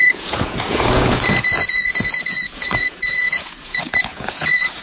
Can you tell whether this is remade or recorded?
remade